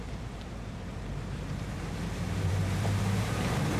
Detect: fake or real fake